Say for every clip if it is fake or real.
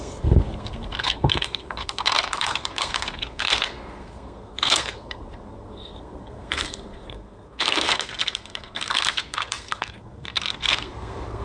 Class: fake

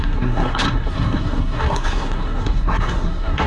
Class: fake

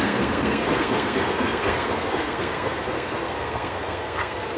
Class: fake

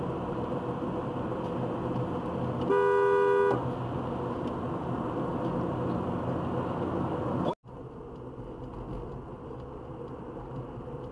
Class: real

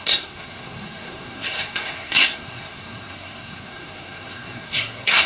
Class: fake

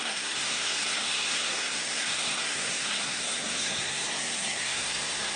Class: fake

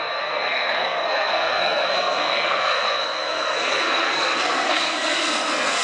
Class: fake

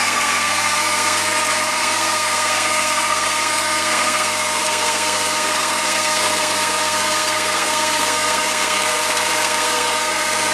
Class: fake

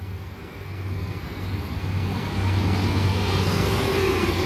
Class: fake